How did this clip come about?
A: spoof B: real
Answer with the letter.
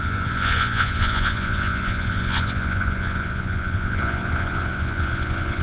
A